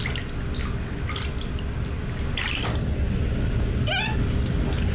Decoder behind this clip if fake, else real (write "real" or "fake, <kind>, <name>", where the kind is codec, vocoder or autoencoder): real